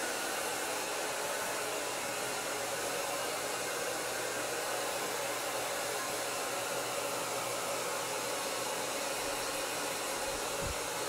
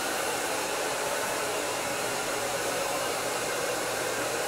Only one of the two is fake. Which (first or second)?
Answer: second